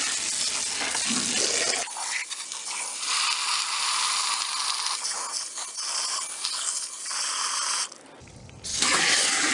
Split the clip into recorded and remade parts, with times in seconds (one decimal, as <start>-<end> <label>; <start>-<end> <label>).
0.0-8.7 recorded; 8.7-9.5 remade